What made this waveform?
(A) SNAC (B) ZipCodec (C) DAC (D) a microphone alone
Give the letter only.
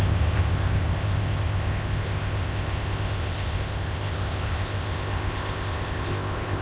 B